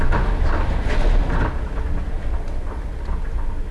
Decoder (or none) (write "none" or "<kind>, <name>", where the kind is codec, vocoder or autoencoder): none